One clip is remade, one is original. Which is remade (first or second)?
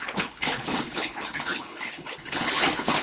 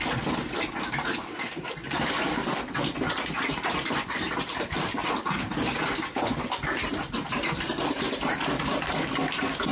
first